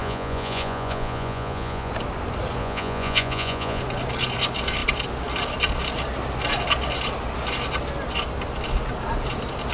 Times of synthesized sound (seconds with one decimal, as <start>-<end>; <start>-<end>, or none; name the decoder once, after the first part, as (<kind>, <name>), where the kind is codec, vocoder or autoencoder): 0.0-1.9 (vocoder, Vocos); 2.6-3.8